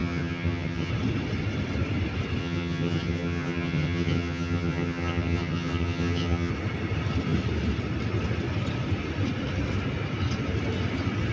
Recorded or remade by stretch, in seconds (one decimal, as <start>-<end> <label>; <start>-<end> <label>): 0.0-0.9 remade; 0.9-2.4 recorded; 2.4-6.5 remade; 6.5-11.3 recorded